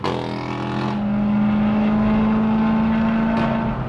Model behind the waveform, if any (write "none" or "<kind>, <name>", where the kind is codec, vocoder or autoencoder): none